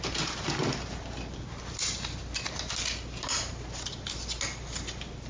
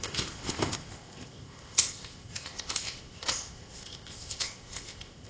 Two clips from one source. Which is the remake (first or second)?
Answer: second